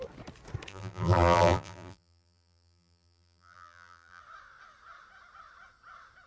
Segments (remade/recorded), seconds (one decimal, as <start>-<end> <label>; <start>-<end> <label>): 0.0-0.7 recorded; 0.7-4.2 remade; 4.2-6.3 recorded